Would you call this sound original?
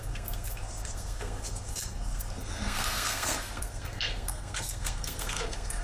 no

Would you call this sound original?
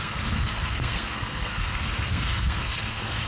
no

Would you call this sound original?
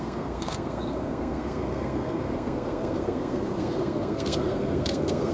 no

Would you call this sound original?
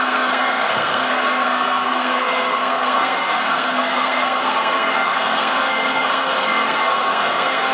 no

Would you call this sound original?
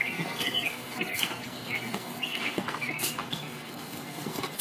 no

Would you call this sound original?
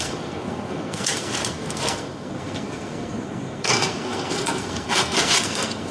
no